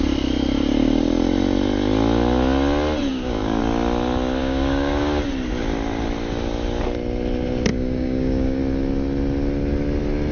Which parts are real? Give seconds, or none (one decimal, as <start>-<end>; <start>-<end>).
0.0-3.1; 3.6-4.4; 5.2-7.7; 8.6-10.3